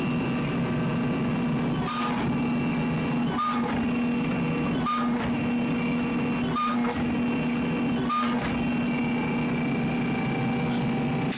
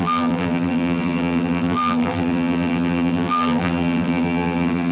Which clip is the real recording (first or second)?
first